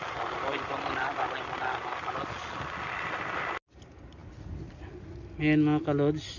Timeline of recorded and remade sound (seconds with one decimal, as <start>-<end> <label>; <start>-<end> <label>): 0.0-6.4 recorded